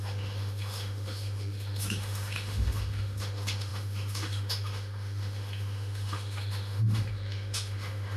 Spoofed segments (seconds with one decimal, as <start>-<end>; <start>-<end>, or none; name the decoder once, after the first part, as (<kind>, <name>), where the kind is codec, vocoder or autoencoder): 0.0-8.2 (autoencoder, DAC-VAE)